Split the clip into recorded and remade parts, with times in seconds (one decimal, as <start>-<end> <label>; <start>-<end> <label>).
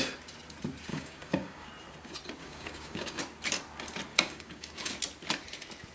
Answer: 0.0-0.9 recorded; 0.9-1.7 remade; 1.7-2.4 recorded; 2.4-3.2 remade; 3.2-4.1 recorded; 4.1-4.9 remade; 4.9-5.9 recorded